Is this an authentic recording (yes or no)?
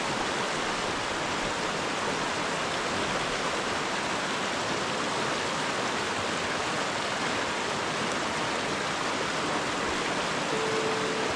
yes